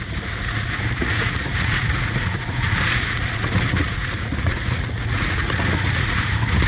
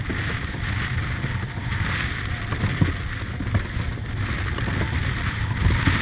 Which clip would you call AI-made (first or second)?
first